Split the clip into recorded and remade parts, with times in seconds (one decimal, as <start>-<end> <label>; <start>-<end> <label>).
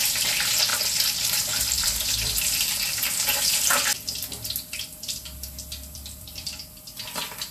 0.0-0.7 recorded; 0.7-3.0 remade; 3.0-3.5 recorded; 3.5-7.5 remade